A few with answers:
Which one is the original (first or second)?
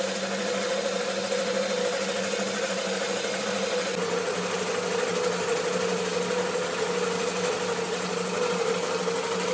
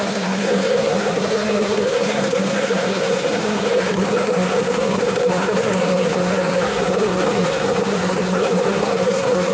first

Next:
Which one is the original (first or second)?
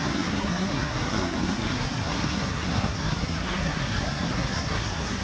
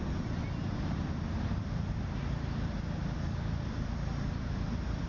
second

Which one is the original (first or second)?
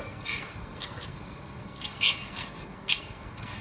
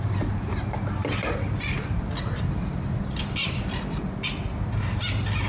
second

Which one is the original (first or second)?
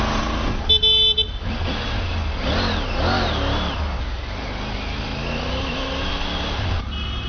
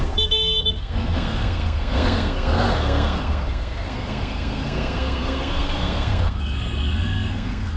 first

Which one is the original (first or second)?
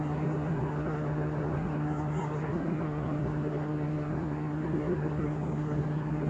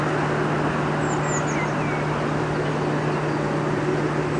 second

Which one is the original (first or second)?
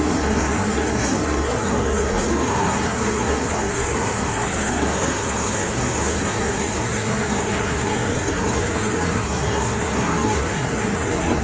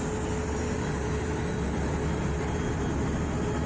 second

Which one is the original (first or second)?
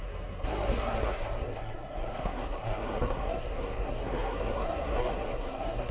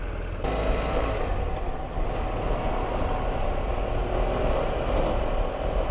second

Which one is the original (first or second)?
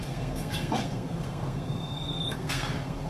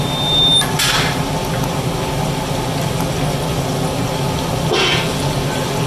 second